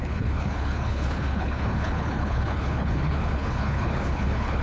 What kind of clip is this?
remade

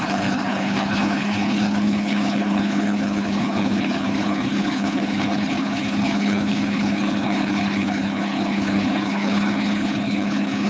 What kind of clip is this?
remade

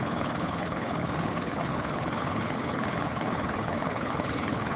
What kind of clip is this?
remade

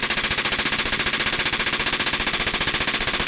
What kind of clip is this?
recorded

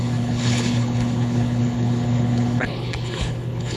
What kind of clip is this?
remade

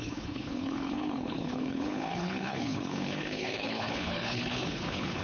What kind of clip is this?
remade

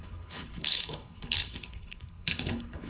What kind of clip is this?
remade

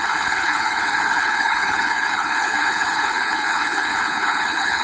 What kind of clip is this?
remade